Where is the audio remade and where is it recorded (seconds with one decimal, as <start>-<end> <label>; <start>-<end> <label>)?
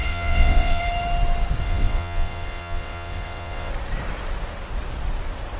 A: 0.0-0.8 remade; 0.8-1.6 recorded; 1.6-3.7 remade; 3.7-5.6 recorded